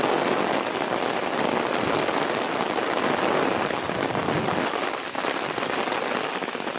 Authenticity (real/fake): real